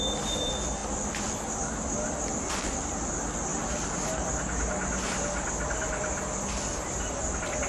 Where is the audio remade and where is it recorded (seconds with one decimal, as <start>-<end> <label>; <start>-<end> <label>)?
0.0-7.7 recorded